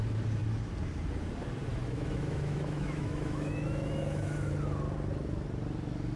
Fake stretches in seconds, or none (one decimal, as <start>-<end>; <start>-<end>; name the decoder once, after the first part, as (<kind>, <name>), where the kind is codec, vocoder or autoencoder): 1.7-4.5 (autoencoder, DAC-VAE)